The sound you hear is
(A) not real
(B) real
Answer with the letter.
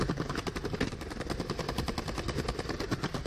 B